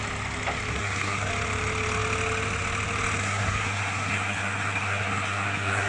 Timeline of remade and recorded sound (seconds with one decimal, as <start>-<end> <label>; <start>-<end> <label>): 0.0-0.7 recorded; 0.7-1.3 remade; 1.3-3.2 recorded; 3.2-5.9 remade